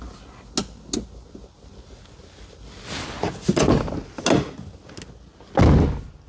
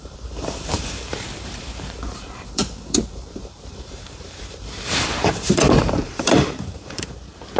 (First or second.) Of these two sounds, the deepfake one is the second